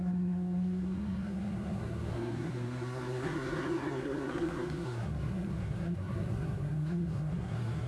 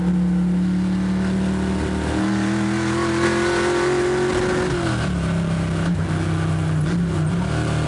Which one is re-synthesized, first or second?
first